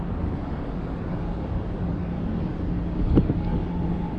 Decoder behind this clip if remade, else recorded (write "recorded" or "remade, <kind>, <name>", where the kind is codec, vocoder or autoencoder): remade, codec, DAC